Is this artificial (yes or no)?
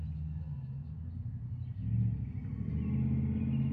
no